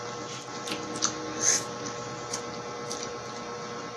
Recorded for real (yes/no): yes